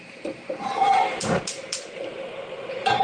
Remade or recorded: remade